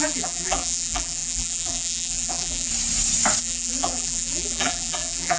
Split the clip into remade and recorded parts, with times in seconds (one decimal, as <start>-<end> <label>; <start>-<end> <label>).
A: 0.0-2.7 remade; 2.7-3.4 recorded; 3.4-5.4 remade